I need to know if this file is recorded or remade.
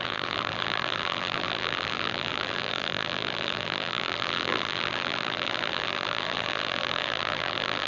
remade